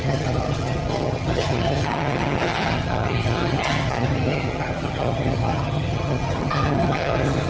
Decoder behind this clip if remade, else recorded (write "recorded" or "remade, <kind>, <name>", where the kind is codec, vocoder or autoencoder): remade, vocoder, HiFi-GAN